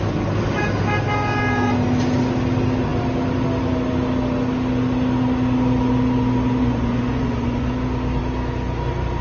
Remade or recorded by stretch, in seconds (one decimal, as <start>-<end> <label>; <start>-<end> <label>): 0.0-6.6 recorded; 6.6-7.7 remade; 7.7-9.2 recorded